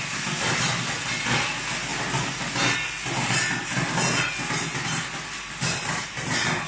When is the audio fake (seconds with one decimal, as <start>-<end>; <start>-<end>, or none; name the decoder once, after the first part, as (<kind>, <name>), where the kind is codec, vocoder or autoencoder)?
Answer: none